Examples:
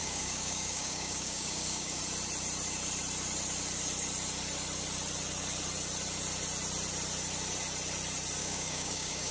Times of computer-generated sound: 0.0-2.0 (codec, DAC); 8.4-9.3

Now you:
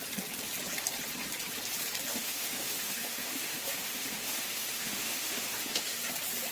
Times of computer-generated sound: 2.1-6.0 (autoencoder, DAC-VAE)